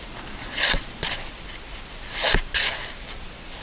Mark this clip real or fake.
real